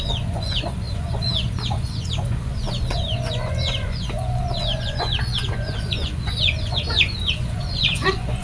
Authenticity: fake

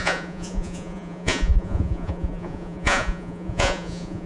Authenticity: fake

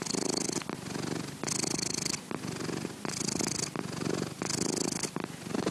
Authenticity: real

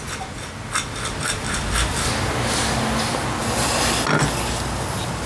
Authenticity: real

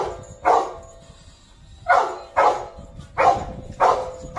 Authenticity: real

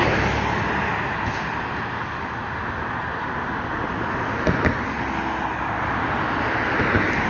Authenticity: real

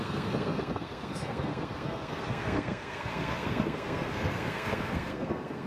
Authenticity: fake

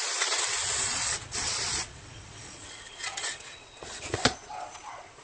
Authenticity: fake